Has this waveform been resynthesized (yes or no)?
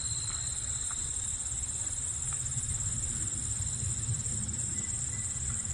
no